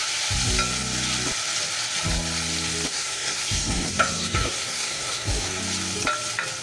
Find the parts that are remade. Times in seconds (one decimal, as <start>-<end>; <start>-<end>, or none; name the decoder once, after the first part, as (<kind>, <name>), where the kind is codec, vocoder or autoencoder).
2.9-5.6 (codec, SNAC)